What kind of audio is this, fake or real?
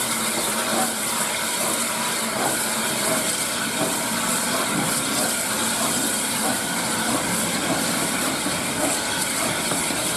real